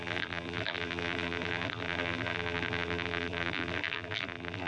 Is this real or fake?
fake